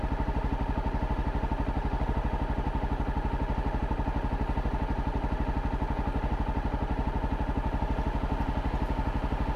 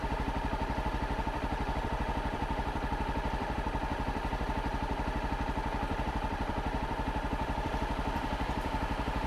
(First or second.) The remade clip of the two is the second